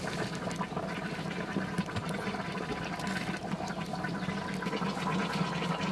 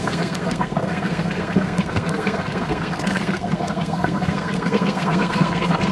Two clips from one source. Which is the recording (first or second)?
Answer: first